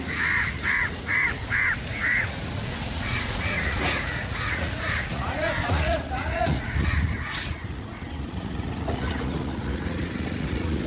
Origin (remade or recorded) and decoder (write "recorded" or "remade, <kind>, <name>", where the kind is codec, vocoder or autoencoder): remade, vocoder, Vocos